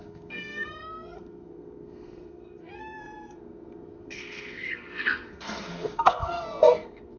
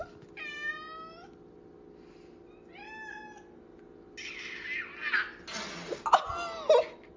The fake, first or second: first